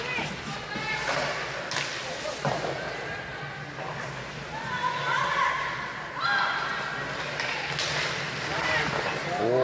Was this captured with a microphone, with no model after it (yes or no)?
yes